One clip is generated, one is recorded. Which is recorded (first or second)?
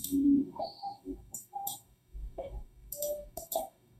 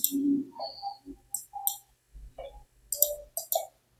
second